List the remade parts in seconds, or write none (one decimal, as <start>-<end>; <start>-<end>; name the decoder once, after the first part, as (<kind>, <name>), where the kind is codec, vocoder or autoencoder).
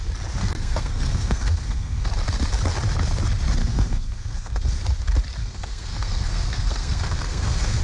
0.4-2.1 (codec, SNAC); 3.6-4.7; 5.4-7.8